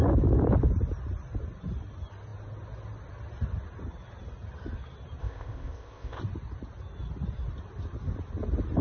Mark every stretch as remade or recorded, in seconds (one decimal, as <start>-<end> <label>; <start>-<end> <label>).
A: 0.0-5.2 recorded; 5.2-6.2 remade; 6.2-8.8 recorded